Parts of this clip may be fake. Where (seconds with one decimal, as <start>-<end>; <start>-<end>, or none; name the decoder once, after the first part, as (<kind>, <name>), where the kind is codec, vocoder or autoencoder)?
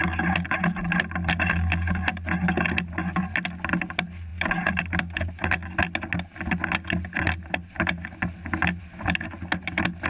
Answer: none